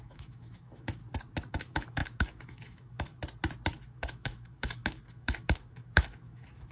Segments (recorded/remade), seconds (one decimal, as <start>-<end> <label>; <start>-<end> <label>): 0.0-1.0 remade; 1.0-1.5 recorded; 1.5-3.1 remade; 3.1-3.8 recorded; 3.8-6.7 remade